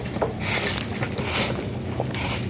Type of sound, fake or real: real